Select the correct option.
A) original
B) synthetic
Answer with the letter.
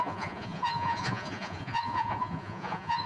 B